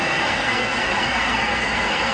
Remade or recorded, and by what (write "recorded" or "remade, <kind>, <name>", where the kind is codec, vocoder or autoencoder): remade, codec, SNAC